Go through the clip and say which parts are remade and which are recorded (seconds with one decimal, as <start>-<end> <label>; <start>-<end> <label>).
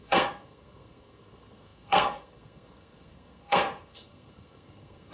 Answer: 0.0-5.1 remade